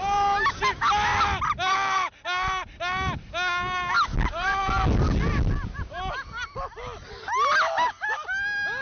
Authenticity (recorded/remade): recorded